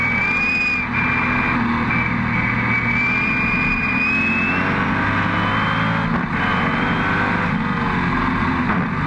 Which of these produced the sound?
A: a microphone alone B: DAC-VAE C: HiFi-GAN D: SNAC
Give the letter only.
A